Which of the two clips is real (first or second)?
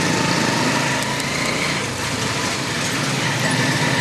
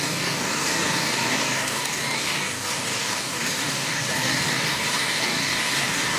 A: first